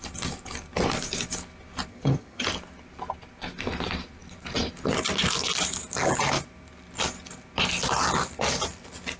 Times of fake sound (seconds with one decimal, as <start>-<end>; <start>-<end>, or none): 1.9-2.5